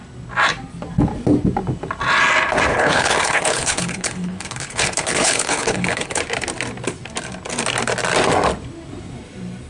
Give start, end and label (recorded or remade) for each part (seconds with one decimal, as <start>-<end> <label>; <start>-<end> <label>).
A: 0.0-2.7 recorded; 2.7-6.2 remade; 6.2-9.7 recorded